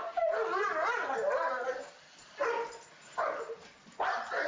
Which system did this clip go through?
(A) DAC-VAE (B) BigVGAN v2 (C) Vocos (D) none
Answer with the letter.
D